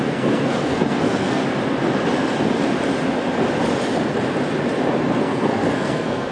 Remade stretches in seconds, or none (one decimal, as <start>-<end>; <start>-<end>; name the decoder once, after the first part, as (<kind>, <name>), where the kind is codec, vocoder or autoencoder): 0.0-1.4 (codec, SNAC); 5.2-6.3